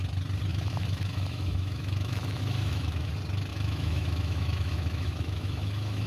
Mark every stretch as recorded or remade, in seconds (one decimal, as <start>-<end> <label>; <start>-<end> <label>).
0.0-0.5 recorded; 0.5-3.1 remade; 3.1-3.5 recorded; 3.5-6.1 remade